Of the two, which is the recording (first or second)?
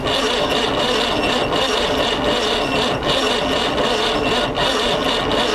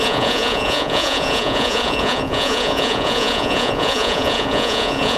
first